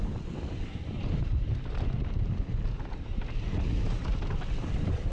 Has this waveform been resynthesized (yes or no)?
no